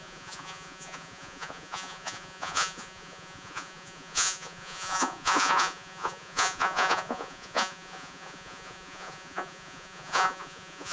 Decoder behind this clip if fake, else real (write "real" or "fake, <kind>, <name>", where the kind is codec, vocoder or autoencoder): fake, vocoder, Vocos